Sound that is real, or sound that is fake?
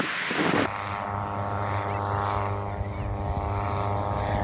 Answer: real